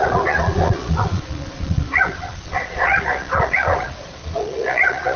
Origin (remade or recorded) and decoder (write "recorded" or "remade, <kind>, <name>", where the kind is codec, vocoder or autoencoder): remade, vocoder, Vocos